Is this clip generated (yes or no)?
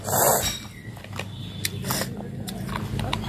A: no